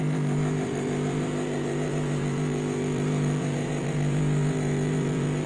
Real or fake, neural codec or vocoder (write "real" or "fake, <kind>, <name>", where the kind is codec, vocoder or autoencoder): fake, vocoder, BigVGAN v2